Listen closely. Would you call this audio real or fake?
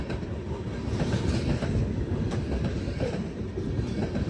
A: real